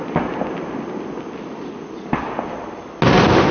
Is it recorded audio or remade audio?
recorded